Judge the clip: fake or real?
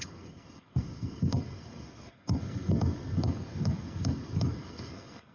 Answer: fake